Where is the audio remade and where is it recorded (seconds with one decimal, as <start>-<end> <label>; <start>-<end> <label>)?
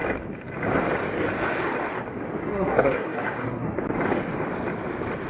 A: 0.0-2.4 recorded; 2.4-3.8 remade; 3.8-5.3 recorded